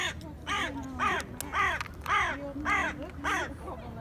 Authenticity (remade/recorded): recorded